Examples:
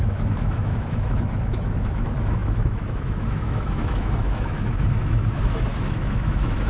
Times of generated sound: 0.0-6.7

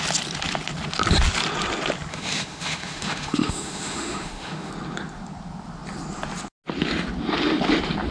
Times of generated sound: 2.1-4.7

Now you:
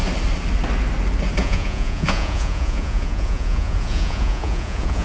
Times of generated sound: 1.4-5.0